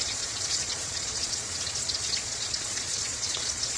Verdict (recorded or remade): remade